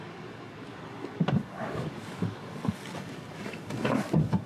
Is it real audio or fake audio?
fake